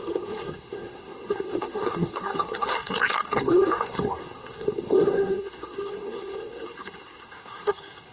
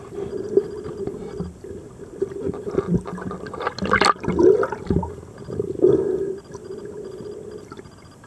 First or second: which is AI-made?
first